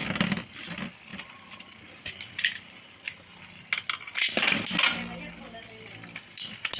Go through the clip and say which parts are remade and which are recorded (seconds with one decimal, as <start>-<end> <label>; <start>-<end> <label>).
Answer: 0.0-6.8 recorded